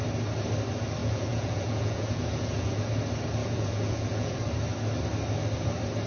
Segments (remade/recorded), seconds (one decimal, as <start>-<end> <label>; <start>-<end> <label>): 0.0-1.0 recorded; 1.0-2.9 remade; 2.9-3.4 recorded; 3.4-4.4 remade; 4.4-6.1 recorded